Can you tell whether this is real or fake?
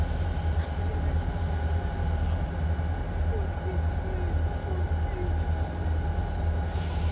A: real